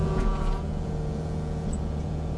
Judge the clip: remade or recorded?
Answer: remade